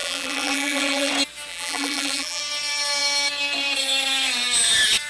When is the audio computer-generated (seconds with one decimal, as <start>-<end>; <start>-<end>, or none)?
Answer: 0.0-1.1; 1.5-2.4